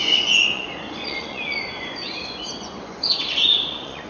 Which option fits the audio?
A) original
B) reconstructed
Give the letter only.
B